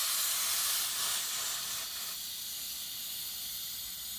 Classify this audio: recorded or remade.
recorded